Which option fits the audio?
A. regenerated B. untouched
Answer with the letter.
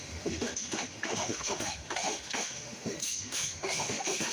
A